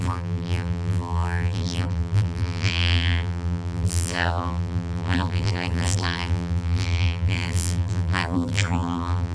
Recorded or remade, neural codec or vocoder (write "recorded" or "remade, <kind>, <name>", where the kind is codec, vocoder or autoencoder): remade, vocoder, BigVGAN v2